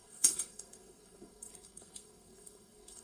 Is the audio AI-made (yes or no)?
yes